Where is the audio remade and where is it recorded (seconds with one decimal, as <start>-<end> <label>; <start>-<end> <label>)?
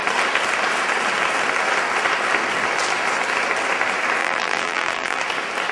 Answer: 0.0-4.2 recorded; 4.2-5.2 remade; 5.2-5.7 recorded